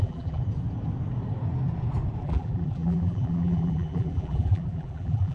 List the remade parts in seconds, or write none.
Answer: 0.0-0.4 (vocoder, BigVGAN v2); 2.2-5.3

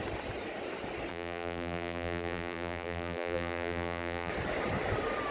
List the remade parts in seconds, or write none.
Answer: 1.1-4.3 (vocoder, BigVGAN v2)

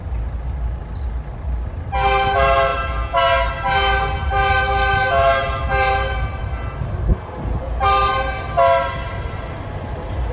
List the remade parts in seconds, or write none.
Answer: none

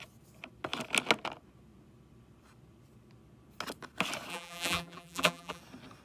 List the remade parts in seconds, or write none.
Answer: 4.3-5.6 (vocoder, BigVGAN v2)

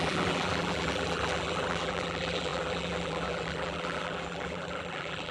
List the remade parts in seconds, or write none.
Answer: 0.0-5.3 (vocoder, BigVGAN v2)

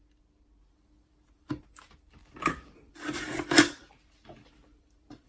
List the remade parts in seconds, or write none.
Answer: 0.6-1.7 (vocoder, BigVGAN v2); 2.2-5.3